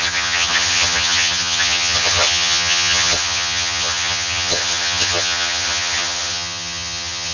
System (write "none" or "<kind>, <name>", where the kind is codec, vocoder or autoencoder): vocoder, HiFi-GAN